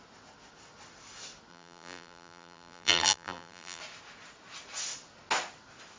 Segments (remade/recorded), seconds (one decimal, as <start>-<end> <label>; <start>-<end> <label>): 0.0-1.5 recorded; 1.5-3.8 remade; 3.8-6.0 recorded

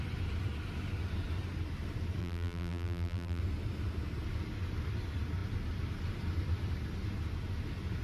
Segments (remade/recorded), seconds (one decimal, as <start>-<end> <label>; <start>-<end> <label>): 0.0-2.2 recorded; 2.2-3.4 remade; 3.4-8.0 recorded